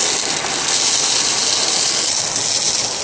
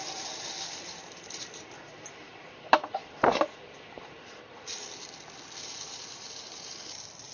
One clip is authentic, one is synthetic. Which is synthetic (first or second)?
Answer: second